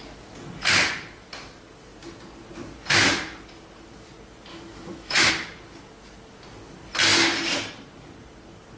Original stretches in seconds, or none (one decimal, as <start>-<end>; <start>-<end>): 0.0-4.5; 5.3-8.8